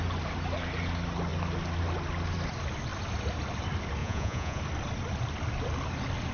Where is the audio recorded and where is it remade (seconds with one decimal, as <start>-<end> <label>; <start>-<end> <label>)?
0.0-4.0 recorded; 4.0-4.6 remade; 4.6-6.3 recorded